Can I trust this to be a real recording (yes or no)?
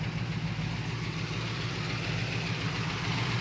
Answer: yes